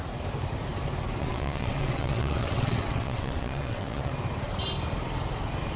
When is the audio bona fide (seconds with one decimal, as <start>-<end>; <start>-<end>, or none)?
0.0-1.2; 4.1-5.8